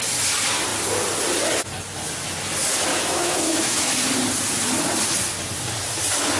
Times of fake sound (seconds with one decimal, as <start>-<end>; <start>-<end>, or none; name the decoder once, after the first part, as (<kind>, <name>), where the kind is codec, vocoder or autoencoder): 2.9-3.9 (autoencoder, DAC-VAE)